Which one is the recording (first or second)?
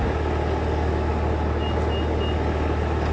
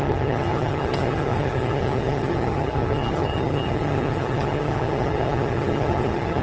first